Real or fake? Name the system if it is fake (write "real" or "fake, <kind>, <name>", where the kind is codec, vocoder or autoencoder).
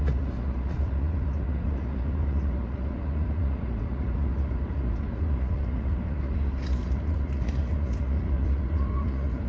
fake, vocoder, Vocos